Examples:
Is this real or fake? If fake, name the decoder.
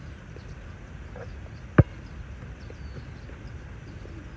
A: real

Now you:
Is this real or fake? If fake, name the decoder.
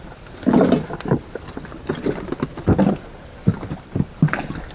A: real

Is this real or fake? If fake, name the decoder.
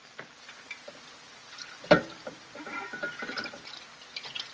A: real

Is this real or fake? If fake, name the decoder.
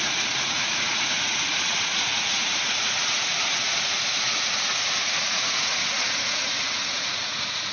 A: fake, vocoder, Vocos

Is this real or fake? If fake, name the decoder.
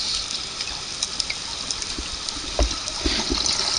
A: real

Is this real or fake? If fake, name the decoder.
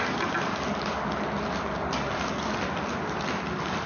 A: real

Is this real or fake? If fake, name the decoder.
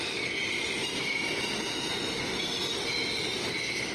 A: real